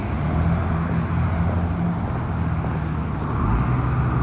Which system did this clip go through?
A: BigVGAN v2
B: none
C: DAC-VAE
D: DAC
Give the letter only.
B